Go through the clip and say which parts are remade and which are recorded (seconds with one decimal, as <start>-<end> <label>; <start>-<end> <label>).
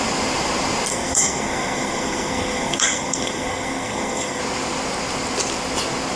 0.0-0.9 recorded; 0.9-4.4 remade; 4.4-6.2 recorded